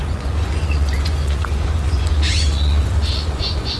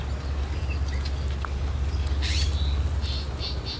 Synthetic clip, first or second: first